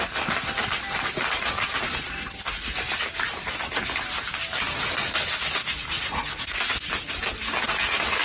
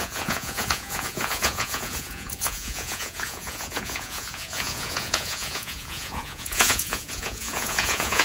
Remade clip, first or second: second